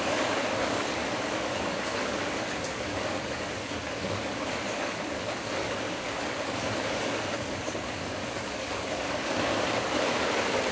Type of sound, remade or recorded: remade